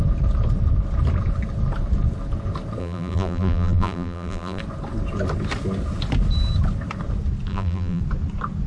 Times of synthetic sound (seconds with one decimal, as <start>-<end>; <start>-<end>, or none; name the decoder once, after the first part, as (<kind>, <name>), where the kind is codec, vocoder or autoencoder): 2.8-4.6 (vocoder, BigVGAN v2); 7.5-8.0